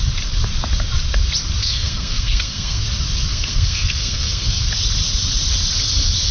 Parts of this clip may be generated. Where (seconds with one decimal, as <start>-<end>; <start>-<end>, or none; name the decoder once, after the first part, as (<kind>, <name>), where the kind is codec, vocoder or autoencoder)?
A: 1.6-2.8 (codec, SNAC); 3.3-4.7